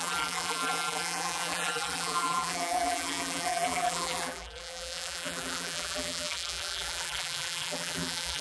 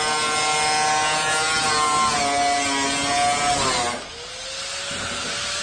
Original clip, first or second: second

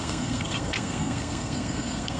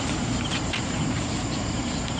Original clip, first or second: second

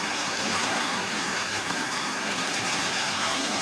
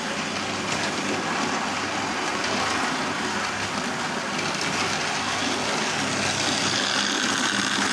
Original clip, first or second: second